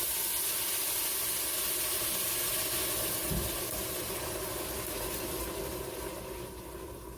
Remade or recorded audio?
recorded